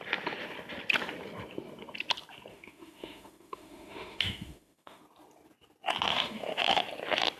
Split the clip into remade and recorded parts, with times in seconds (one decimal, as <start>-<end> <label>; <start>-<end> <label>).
0.0-2.5 recorded; 2.5-5.0 remade; 5.0-6.1 recorded; 6.1-6.8 remade; 6.8-7.4 recorded